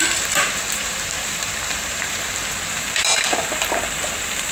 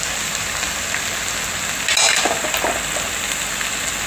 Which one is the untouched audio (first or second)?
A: second